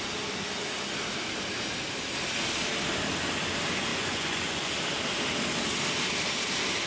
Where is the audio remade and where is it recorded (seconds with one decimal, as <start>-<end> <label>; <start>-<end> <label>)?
0.0-3.9 recorded; 3.9-4.7 remade; 4.7-6.9 recorded